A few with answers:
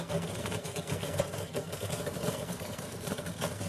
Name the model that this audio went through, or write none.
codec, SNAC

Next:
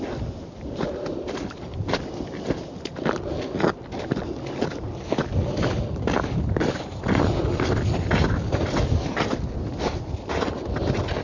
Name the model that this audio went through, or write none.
none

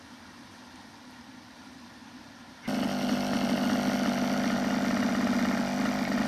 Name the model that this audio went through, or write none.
none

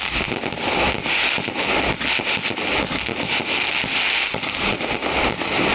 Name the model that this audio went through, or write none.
none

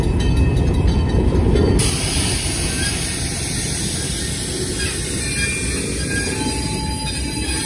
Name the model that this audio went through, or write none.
none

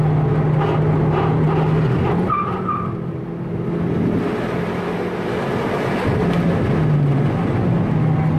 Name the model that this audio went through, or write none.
none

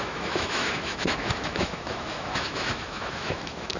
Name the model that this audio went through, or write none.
autoencoder, DAC-VAE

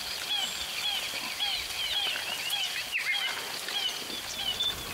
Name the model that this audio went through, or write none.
none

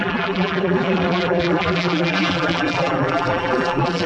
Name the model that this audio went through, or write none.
vocoder, BigVGAN v2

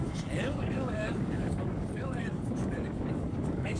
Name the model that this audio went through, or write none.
codec, DAC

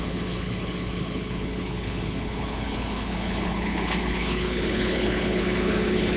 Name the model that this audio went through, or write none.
codec, HILCodec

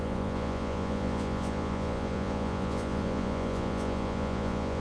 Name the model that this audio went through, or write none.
vocoder, Vocos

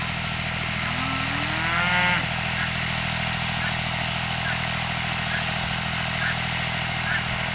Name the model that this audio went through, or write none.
none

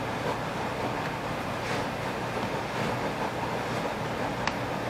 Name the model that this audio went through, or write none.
none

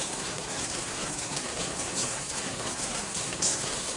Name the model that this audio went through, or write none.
codec, SNAC